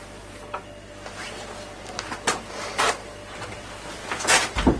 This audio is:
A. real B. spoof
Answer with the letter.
A